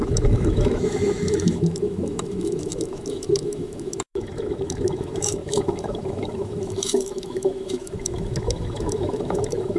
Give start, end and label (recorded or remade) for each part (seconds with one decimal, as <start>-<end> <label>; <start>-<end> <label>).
0.0-9.8 remade